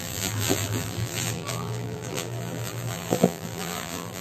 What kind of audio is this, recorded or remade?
remade